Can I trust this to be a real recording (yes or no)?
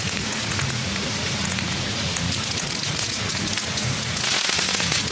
no